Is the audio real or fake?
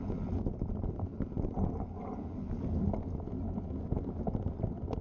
real